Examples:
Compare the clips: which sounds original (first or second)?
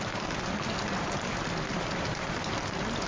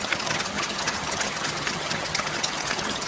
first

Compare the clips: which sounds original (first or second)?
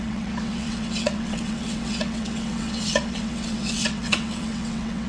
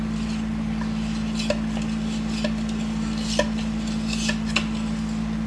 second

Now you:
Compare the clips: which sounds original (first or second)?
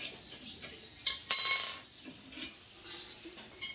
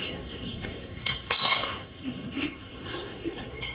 first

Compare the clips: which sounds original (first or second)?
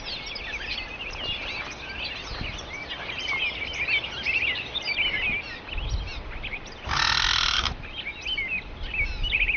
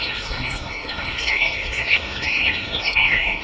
first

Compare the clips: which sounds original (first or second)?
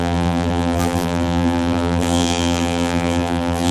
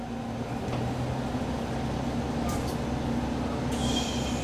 second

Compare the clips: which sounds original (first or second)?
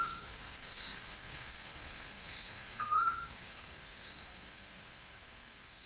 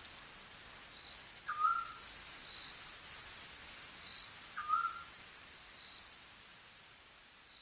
second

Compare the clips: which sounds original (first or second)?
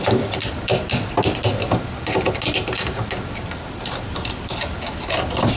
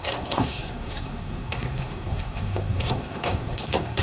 first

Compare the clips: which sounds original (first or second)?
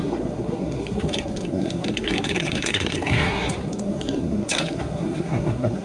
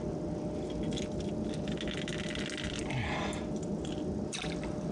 second